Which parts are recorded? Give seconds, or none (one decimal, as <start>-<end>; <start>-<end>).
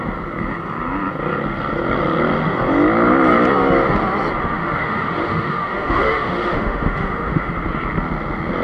0.0-4.4; 7.5-8.6